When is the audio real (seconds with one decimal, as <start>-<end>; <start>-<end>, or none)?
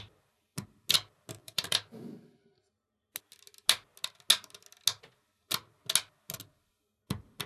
0.0-1.4; 2.1-7.5